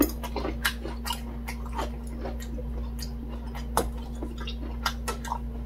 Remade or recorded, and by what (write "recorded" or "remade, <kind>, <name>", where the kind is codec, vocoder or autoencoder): recorded